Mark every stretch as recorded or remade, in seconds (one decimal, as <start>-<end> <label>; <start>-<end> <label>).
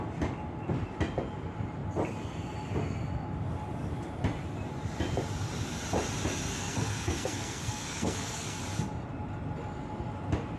0.0-6.5 recorded; 6.5-8.6 remade; 8.6-10.6 recorded